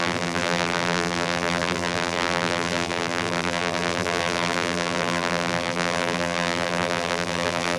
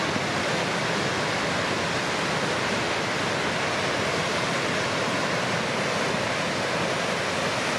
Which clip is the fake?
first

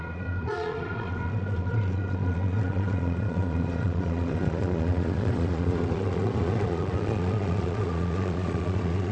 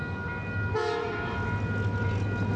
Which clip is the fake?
first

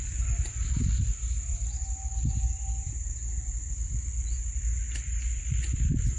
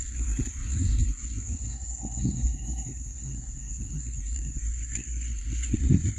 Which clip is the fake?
second